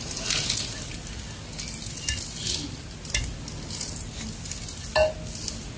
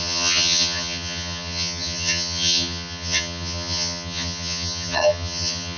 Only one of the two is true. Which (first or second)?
first